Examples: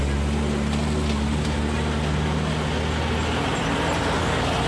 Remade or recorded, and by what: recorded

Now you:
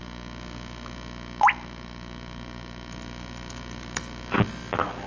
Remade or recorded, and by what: recorded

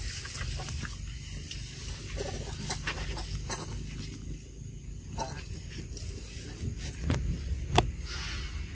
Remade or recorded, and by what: recorded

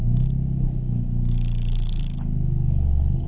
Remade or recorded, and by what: recorded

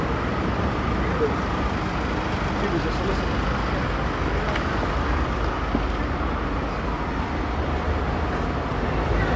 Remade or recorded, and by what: recorded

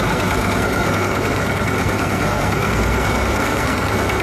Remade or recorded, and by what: remade, codec, SNAC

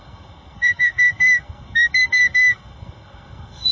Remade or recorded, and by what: remade, codec, SNAC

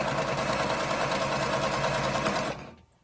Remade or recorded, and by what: recorded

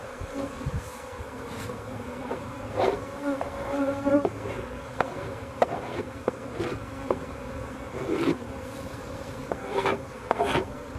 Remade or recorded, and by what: remade, codec, SNAC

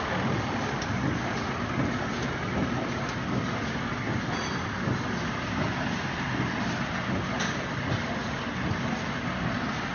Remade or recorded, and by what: recorded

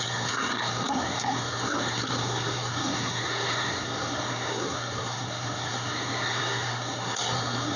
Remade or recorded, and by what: remade, codec, SNAC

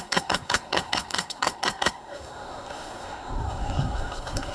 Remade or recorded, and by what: remade, codec, SNAC